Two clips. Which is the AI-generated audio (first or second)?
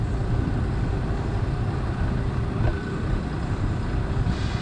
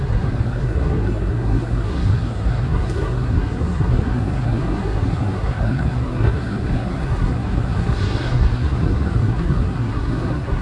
second